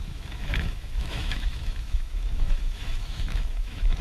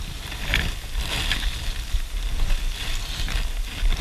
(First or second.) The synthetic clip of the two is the first